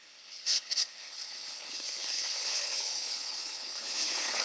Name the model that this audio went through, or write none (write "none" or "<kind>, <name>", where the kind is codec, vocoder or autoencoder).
codec, HILCodec